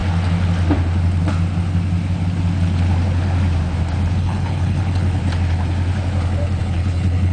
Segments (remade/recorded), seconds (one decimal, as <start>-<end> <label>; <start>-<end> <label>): 0.0-4.2 recorded; 4.2-5.2 remade; 5.2-6.6 recorded; 6.6-7.3 remade